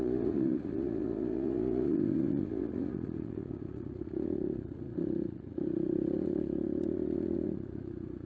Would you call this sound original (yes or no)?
no